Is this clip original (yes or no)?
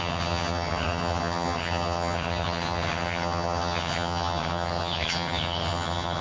no